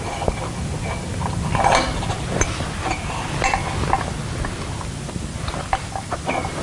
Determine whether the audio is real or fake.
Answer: real